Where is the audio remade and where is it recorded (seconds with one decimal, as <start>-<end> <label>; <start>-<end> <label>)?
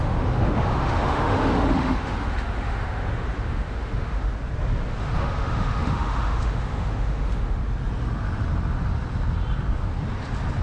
0.0-4.3 remade; 4.3-5.0 recorded; 5.0-7.6 remade; 7.6-10.6 recorded